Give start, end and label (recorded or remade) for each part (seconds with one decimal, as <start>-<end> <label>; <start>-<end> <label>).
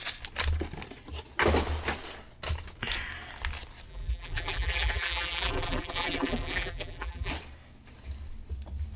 0.0-3.9 recorded; 3.9-7.3 remade; 7.3-9.0 recorded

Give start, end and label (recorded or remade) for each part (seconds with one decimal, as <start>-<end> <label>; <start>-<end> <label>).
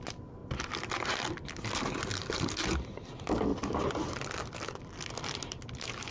0.0-3.5 recorded; 3.5-5.1 remade; 5.1-6.1 recorded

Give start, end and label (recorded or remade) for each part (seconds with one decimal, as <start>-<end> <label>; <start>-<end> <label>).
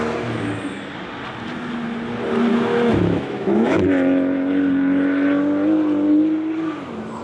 0.0-2.5 recorded; 2.5-3.8 remade; 3.8-7.2 recorded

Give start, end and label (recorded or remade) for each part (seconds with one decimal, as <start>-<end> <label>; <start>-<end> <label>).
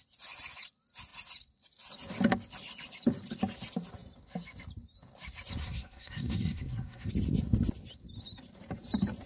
0.0-5.6 recorded; 5.6-7.1 remade; 7.1-9.3 recorded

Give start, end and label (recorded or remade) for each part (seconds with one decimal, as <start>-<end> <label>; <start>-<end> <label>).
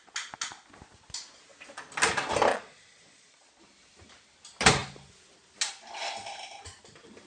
0.0-2.5 recorded; 2.5-3.6 remade; 3.6-7.3 recorded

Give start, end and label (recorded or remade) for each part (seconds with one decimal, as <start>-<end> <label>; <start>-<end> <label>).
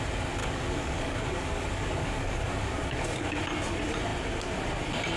0.0-0.4 recorded; 0.4-3.4 remade; 3.4-5.2 recorded